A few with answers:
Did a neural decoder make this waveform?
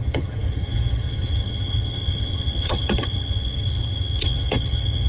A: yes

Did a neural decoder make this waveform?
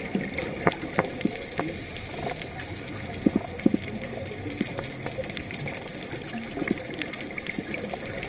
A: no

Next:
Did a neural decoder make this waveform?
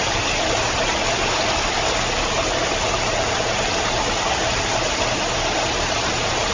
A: no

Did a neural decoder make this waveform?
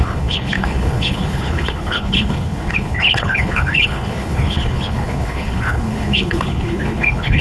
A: yes